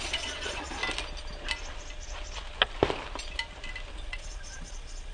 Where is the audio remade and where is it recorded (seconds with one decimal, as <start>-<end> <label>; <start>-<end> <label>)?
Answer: 0.0-0.8 remade; 0.8-3.9 recorded; 3.9-5.1 remade